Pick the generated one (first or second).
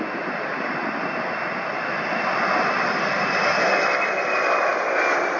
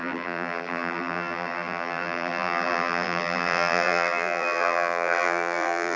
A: second